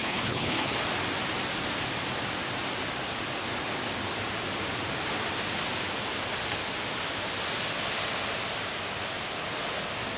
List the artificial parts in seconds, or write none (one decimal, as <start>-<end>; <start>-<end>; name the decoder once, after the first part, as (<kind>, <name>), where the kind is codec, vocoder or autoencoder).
0.0-0.8 (codec, HILCodec)